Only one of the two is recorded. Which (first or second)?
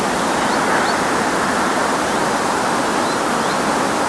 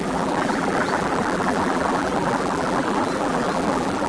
first